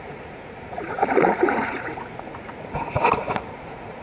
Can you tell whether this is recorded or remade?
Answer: remade